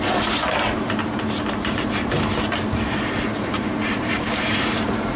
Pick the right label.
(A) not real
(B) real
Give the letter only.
A